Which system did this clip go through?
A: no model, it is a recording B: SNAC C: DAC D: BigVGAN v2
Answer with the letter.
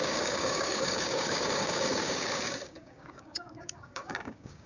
C